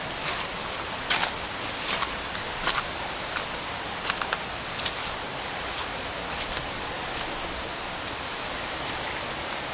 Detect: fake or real real